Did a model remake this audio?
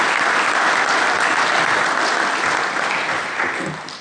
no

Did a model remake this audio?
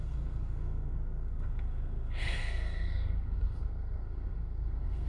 yes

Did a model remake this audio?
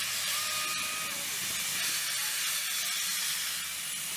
no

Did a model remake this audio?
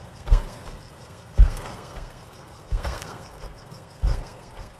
yes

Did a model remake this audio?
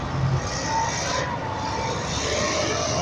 no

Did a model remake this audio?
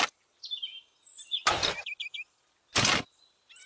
no